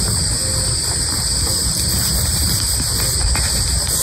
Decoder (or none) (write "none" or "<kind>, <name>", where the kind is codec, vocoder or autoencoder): none